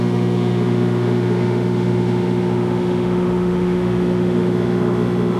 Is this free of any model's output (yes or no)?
no